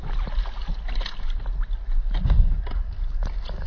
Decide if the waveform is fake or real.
real